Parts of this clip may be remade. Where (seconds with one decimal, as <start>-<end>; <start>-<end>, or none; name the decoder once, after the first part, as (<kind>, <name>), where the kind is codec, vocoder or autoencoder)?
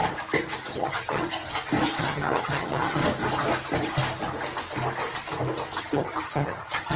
0.7-1.4 (vocoder, HiFi-GAN); 2.0-3.0; 5.8-7.0